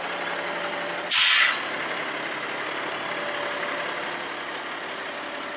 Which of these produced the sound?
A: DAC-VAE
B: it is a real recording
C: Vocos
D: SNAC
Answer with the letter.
B